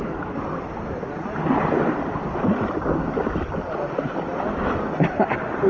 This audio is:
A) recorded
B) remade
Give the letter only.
A